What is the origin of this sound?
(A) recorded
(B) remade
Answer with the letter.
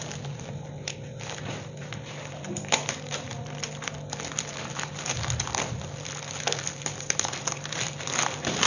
A